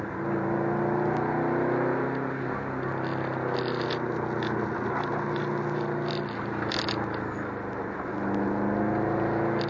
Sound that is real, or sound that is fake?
real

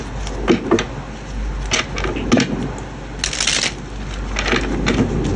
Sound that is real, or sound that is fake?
real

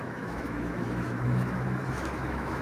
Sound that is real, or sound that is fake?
fake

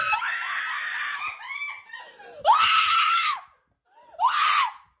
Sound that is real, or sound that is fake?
real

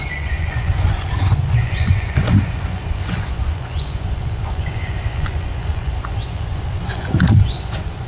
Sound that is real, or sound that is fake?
fake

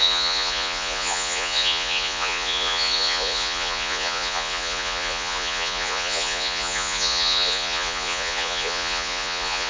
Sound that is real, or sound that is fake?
fake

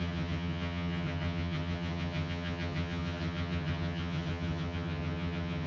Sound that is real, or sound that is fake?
fake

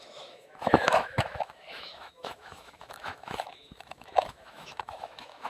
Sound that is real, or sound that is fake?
fake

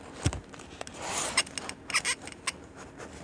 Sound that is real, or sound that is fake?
real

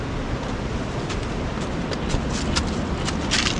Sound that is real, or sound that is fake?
real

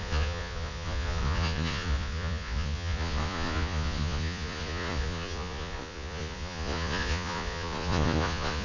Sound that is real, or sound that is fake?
fake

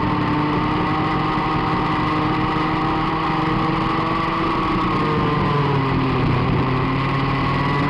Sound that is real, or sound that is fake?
real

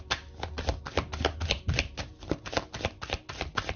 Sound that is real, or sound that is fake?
real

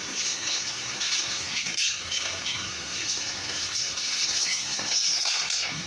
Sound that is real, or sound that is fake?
fake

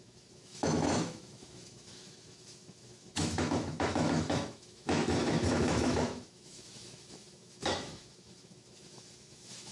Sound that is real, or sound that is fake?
fake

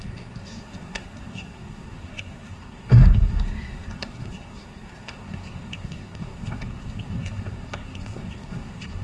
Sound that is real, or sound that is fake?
fake